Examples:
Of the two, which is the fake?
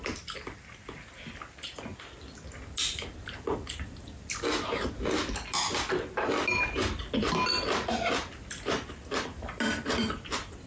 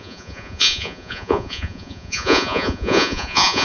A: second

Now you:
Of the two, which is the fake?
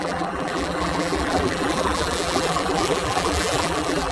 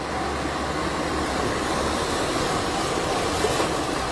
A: first